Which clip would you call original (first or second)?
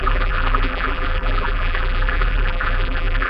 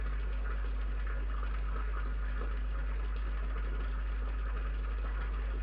second